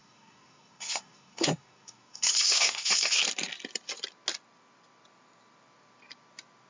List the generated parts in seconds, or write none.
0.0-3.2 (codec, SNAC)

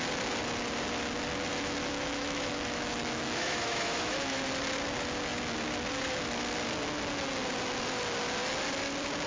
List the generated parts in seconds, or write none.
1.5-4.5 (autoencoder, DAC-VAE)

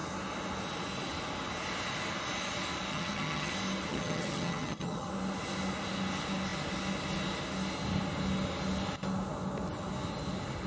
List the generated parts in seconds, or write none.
2.9-3.5 (vocoder, HiFi-GAN); 3.9-5.1

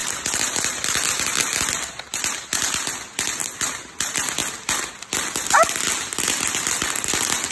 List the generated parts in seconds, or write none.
none

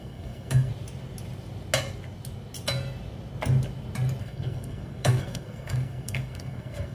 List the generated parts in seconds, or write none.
0.0-0.7 (codec, SNAC); 4.2-6.9